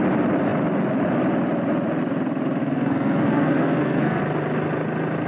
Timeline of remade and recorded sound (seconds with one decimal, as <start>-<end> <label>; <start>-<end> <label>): 0.0-2.6 recorded; 2.6-4.2 remade; 4.2-5.3 recorded